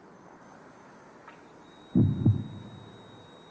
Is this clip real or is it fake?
real